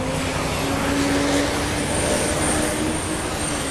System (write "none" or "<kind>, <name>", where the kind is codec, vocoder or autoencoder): none